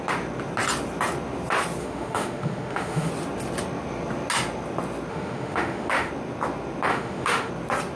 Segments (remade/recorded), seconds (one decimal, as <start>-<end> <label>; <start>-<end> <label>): 0.0-1.8 recorded; 1.8-3.1 remade; 3.1-5.1 recorded; 5.1-6.1 remade; 6.1-6.9 recorded; 6.9-7.5 remade; 7.5-8.0 recorded